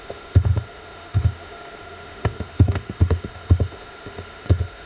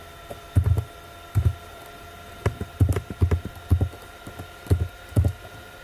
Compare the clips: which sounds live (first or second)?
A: second